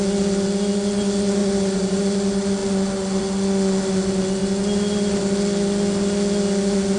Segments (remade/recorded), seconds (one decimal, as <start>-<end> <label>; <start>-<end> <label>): 0.0-1.4 recorded; 1.4-2.0 remade; 2.0-7.0 recorded